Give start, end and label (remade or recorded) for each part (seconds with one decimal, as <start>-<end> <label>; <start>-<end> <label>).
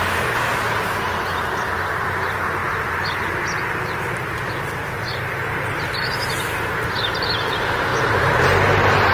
0.0-2.6 recorded; 2.6-7.0 remade; 7.0-9.1 recorded